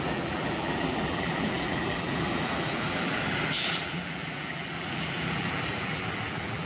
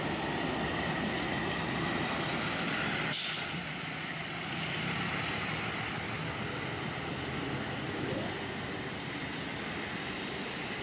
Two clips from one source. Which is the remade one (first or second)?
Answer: first